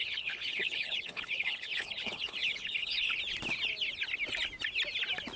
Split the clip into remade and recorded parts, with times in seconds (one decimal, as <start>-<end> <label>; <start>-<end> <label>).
0.0-3.2 remade; 3.2-5.4 recorded